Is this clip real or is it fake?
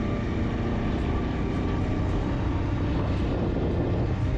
real